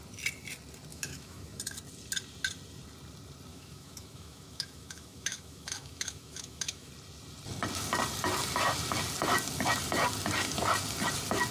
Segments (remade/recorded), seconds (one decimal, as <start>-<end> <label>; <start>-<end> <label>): 0.0-0.9 recorded; 0.9-1.6 remade; 1.6-3.5 recorded; 3.5-6.9 remade; 6.9-11.5 recorded